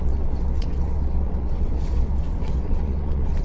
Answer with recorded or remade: remade